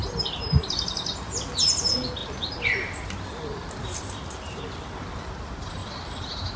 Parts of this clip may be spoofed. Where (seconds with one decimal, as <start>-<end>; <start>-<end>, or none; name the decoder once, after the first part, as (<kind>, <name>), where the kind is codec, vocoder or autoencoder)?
2.2-4.6 (vocoder, BigVGAN v2); 5.8-6.6